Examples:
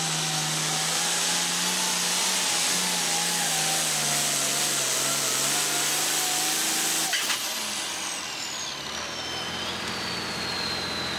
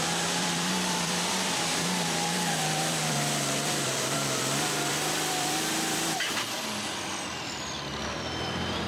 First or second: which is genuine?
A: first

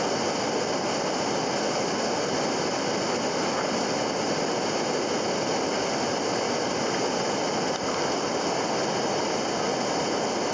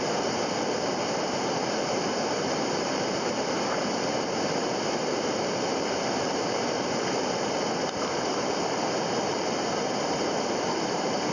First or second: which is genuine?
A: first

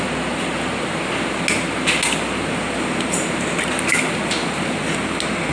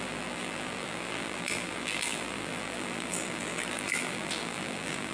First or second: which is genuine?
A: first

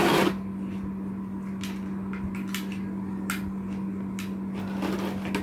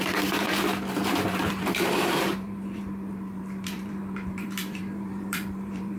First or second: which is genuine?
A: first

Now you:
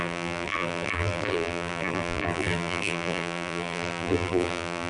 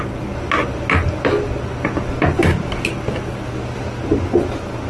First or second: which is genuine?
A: second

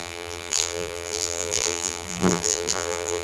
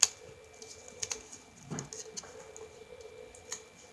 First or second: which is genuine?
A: second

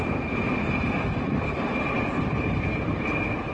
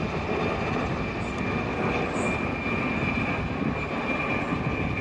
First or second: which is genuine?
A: second